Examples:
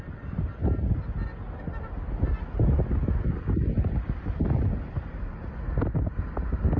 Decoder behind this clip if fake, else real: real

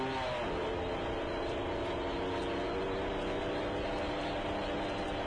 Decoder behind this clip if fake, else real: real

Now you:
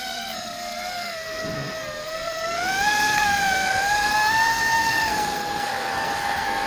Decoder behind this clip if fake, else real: fake, codec, SNAC